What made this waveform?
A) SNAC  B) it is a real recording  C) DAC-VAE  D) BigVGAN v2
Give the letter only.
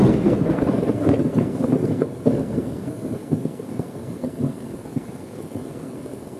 A